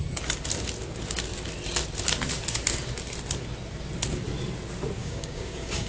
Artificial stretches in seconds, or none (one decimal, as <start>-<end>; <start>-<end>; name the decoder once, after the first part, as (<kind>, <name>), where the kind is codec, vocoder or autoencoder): 5.0-5.9 (codec, DAC)

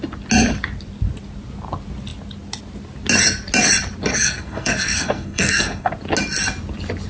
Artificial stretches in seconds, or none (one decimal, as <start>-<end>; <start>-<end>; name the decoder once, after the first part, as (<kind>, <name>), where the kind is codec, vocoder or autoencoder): 4.1-5.9 (codec, SNAC)

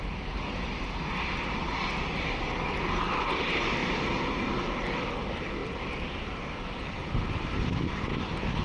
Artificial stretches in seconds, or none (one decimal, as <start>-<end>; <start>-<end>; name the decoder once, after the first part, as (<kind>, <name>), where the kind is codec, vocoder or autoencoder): none

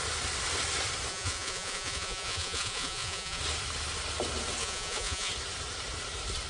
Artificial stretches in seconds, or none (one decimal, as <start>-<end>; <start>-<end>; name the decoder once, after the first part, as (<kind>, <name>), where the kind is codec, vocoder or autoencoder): 1.1-3.4 (vocoder, Vocos); 4.6-5.3

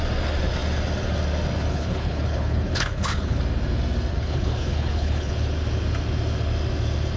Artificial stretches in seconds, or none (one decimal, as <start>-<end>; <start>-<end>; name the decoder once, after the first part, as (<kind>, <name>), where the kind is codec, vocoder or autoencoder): 1.7-3.4 (codec, HILCodec); 4.1-5.3